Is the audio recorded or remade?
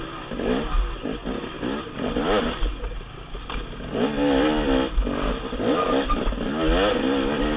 recorded